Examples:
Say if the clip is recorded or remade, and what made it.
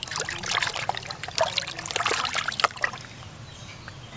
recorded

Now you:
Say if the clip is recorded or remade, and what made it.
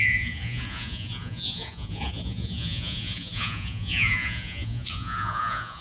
remade, vocoder, Vocos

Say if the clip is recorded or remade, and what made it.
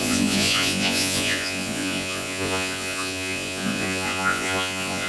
remade, vocoder, Vocos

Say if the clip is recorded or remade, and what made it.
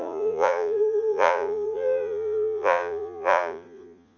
remade, vocoder, Vocos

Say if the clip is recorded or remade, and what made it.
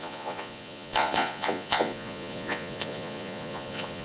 remade, vocoder, Vocos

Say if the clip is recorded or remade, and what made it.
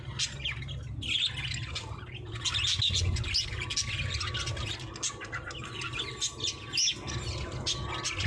recorded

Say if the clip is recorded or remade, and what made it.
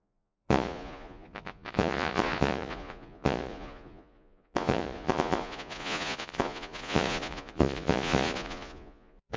remade, vocoder, Vocos